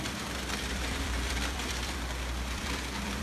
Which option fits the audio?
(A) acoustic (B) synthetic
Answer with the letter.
B